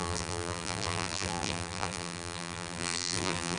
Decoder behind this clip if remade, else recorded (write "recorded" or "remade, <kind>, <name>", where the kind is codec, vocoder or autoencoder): remade, vocoder, BigVGAN v2